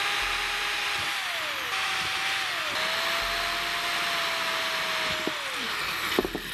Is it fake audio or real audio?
real